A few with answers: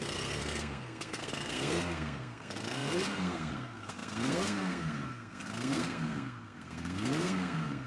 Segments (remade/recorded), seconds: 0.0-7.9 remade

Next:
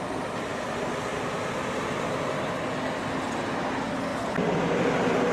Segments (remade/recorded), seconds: 0.0-5.3 recorded

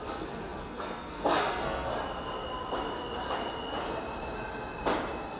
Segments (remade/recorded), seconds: 0.0-1.9 remade; 1.9-5.4 recorded